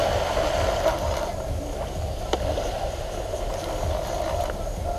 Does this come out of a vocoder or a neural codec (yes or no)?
no